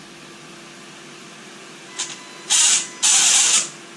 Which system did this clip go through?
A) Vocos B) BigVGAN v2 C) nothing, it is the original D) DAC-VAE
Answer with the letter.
C